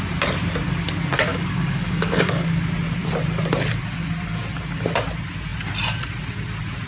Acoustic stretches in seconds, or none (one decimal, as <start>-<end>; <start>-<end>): 0.0-1.3; 2.5-6.9